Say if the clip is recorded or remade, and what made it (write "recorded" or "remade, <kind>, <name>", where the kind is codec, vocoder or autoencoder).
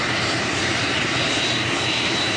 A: remade, vocoder, BigVGAN v2